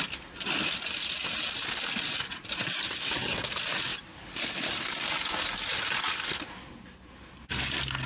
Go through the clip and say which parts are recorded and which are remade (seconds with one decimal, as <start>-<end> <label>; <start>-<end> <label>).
0.0-8.1 recorded